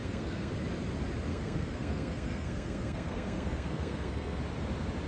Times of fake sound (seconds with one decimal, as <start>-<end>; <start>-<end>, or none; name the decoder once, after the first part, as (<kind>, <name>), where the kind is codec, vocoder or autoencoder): 0.0-0.5 (codec, SNAC); 1.3-4.4